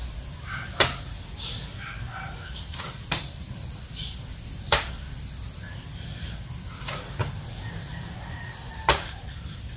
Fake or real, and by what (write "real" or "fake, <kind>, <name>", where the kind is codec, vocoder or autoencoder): fake, vocoder, BigVGAN v2